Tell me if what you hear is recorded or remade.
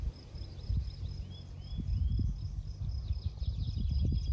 recorded